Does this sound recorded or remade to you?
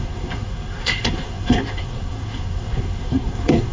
remade